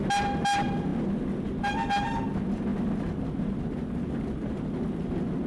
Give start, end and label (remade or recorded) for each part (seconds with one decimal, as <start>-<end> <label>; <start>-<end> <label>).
0.0-5.5 recorded